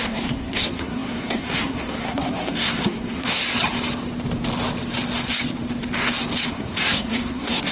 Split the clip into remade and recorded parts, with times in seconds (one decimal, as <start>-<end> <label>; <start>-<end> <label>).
0.0-3.4 remade; 3.4-6.5 recorded; 6.5-7.7 remade